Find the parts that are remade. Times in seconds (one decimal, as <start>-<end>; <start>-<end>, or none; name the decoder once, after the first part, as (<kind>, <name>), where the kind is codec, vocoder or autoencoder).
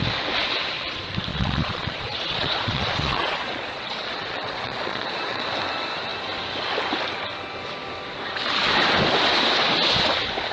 1.3-5.5 (vocoder, Vocos)